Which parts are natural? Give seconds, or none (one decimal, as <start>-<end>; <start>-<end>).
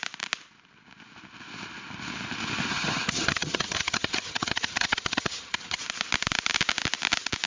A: 0.0-2.7; 5.8-7.5